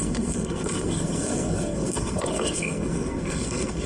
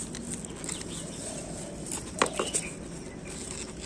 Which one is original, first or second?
second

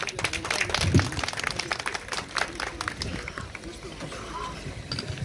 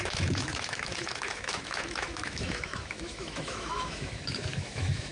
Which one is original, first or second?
first